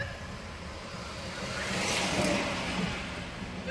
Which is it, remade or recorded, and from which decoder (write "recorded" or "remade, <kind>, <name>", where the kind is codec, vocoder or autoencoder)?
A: recorded